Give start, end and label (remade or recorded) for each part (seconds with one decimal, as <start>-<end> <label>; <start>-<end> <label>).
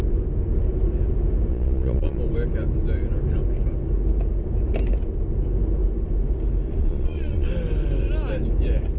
0.0-1.5 recorded; 1.5-2.2 remade; 2.2-6.8 recorded; 6.8-7.5 remade; 7.5-9.0 recorded